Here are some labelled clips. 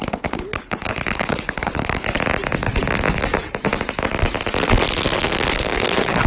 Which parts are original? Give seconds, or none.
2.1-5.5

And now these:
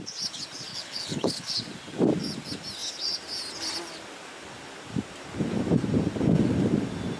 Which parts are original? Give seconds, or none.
0.0-0.7; 1.5-7.2